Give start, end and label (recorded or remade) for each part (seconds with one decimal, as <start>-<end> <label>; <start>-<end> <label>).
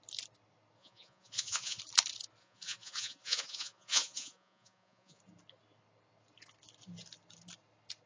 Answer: 0.0-0.8 recorded; 0.8-1.8 remade; 1.8-2.4 recorded; 2.4-5.2 remade; 5.2-8.1 recorded